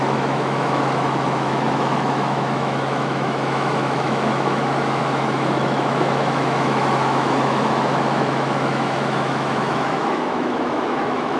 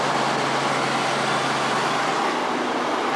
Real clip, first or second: second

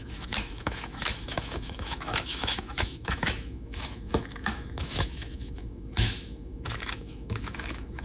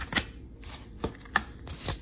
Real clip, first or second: second